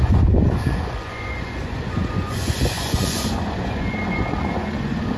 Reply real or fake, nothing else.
fake